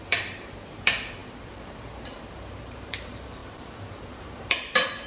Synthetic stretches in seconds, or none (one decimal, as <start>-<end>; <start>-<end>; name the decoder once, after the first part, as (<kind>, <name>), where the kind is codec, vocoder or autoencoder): 0.0-5.1 (vocoder, BigVGAN v2)